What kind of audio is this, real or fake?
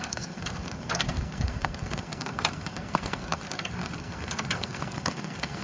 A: fake